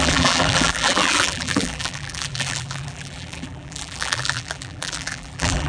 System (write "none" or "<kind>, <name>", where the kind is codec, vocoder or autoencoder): vocoder, BigVGAN v2